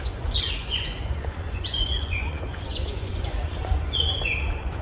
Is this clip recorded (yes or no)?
no